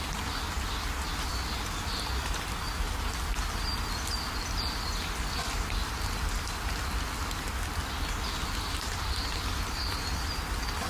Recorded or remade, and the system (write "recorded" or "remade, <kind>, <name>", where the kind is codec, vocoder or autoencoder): recorded